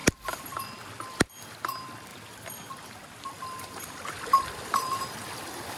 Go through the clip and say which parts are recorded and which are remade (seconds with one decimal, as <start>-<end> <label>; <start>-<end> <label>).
0.0-0.6 remade; 0.6-2.1 recorded; 2.1-4.8 remade; 4.8-5.8 recorded